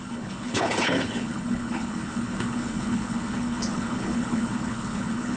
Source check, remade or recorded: remade